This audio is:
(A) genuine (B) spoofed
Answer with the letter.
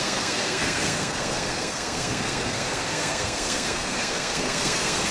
B